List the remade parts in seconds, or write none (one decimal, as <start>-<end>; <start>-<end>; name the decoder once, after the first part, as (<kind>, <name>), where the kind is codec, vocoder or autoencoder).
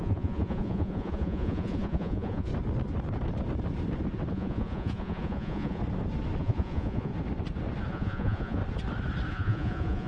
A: 0.0-2.5 (vocoder, Vocos); 4.3-5.8; 6.4-7.1; 7.9-8.6; 9.3-10.1